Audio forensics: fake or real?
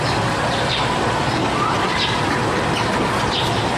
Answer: real